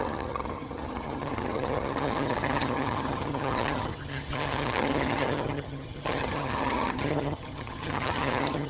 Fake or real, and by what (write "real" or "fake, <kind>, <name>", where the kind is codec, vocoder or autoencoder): fake, vocoder, HiFi-GAN